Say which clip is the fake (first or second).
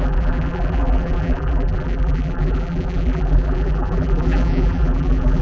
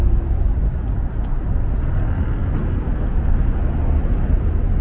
first